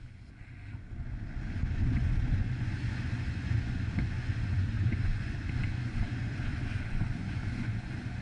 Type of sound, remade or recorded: remade